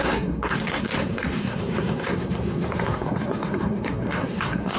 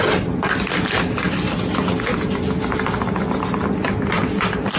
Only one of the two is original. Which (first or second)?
second